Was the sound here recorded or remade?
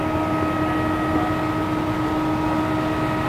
recorded